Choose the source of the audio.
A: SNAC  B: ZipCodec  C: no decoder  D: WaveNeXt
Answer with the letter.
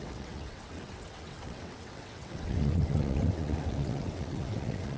D